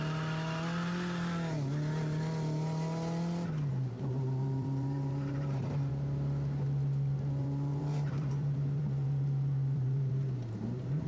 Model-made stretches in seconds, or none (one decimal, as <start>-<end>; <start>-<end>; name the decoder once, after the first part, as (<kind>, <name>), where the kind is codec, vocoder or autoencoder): 3.7-5.9 (vocoder, BigVGAN v2); 7.4-11.1